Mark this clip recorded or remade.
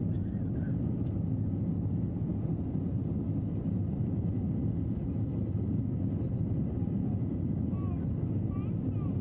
recorded